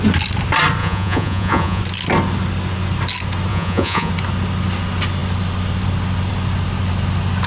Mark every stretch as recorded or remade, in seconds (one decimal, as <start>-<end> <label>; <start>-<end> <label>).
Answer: 0.0-0.8 recorded; 0.8-1.8 remade; 1.8-3.5 recorded; 3.5-4.1 remade; 4.1-7.5 recorded